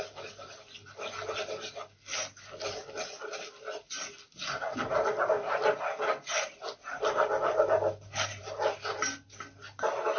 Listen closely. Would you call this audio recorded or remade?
recorded